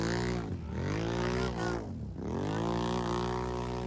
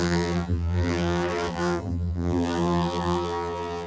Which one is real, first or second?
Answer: first